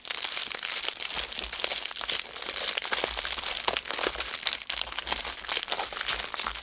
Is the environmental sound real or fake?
real